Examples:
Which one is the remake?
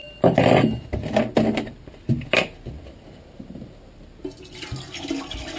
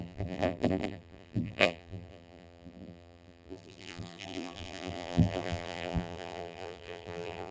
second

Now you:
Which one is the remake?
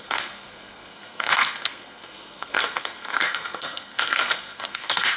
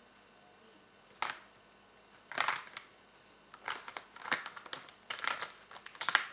first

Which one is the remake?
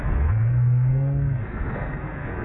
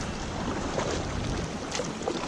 first